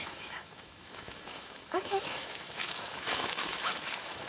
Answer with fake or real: fake